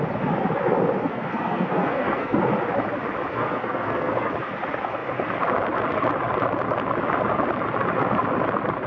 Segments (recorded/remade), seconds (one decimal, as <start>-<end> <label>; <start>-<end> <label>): 0.0-1.0 recorded; 1.0-2.4 remade; 2.4-3.3 recorded; 3.3-4.3 remade; 4.3-8.9 recorded